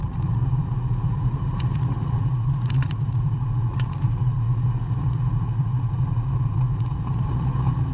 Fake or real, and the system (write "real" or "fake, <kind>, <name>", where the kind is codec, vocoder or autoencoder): fake, vocoder, Vocos